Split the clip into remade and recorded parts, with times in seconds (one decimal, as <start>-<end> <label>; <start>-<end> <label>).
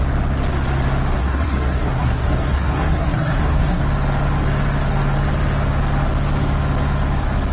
0.0-1.2 recorded; 1.2-3.8 remade; 3.8-7.5 recorded